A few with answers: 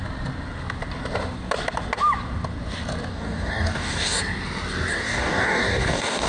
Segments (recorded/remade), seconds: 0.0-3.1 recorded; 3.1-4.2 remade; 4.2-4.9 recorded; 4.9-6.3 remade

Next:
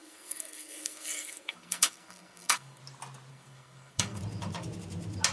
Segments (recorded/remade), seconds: 0.0-2.8 remade; 2.8-3.3 recorded; 3.3-4.2 remade; 4.2-5.3 recorded

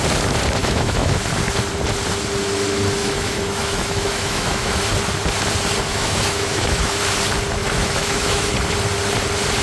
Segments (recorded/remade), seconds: 0.0-0.6 recorded; 0.6-1.1 remade; 1.1-3.0 recorded; 3.0-4.8 remade; 4.8-5.9 recorded; 5.9-7.0 remade; 7.0-7.6 recorded; 7.6-8.5 remade; 8.5-9.6 recorded

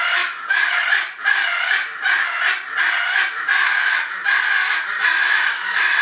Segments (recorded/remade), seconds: 0.0-1.9 remade; 1.9-5.4 recorded; 5.4-6.0 remade

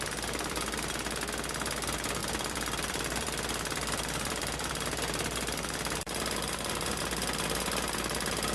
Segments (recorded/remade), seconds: 0.0-2.2 recorded; 2.2-7.0 remade; 7.0-8.5 recorded